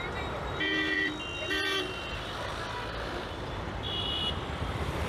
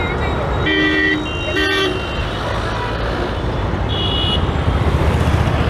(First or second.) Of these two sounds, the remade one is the first